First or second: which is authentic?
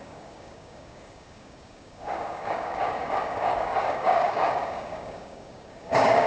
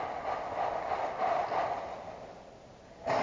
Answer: second